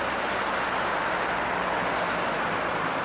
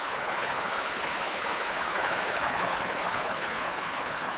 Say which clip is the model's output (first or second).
second